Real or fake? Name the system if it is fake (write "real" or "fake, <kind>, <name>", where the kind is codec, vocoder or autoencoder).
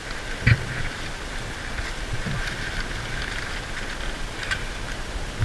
real